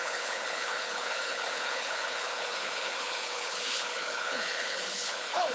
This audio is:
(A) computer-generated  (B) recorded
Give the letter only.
A